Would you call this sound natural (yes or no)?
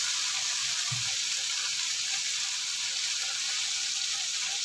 yes